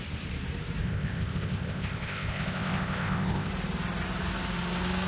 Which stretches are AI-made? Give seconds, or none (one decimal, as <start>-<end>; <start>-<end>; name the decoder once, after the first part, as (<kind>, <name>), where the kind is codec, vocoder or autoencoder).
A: 0.8-3.5 (codec, ZipCodec)